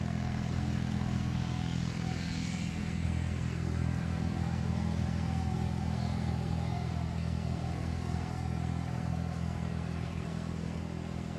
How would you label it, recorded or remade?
remade